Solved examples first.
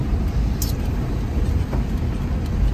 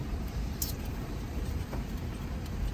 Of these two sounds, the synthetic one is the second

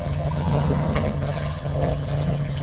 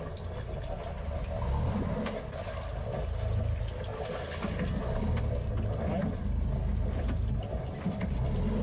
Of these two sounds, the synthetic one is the first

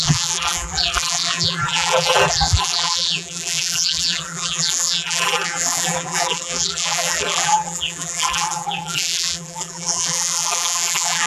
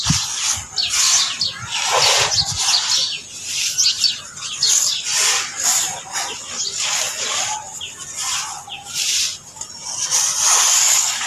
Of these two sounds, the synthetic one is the first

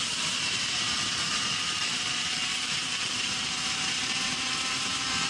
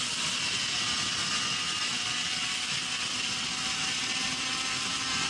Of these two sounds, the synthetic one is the first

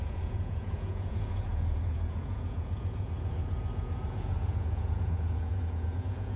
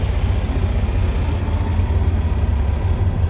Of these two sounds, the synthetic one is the first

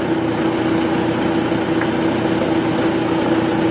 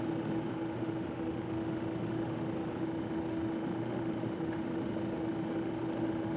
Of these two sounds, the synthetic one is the second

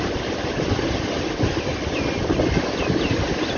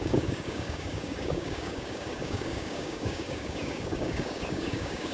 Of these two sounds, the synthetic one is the second